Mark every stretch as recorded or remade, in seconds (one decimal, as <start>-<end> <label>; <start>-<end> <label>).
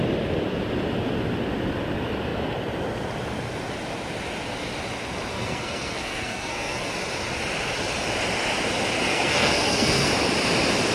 0.0-5.3 recorded; 5.3-6.9 remade; 6.9-9.1 recorded; 9.1-10.1 remade; 10.1-10.9 recorded